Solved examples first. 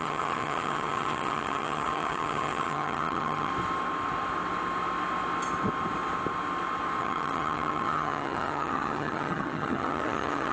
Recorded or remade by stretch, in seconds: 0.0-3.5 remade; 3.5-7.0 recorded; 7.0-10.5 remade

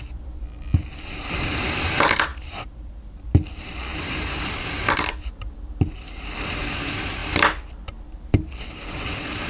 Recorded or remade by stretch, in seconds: 0.0-7.2 remade; 7.2-8.0 recorded; 8.0-9.5 remade